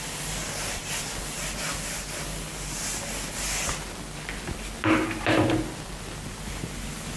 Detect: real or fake real